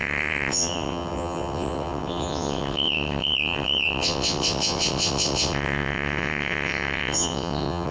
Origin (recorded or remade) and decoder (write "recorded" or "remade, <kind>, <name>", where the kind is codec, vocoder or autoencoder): remade, vocoder, WaveNeXt